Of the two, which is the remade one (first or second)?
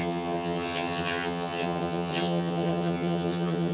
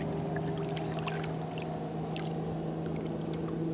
first